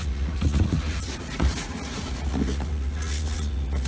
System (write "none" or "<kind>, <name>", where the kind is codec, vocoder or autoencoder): vocoder, Vocos